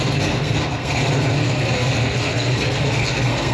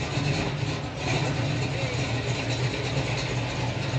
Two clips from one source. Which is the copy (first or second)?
first